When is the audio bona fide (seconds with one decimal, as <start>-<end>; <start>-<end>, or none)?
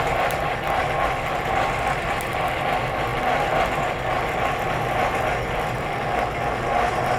0.0-0.8; 2.3-7.2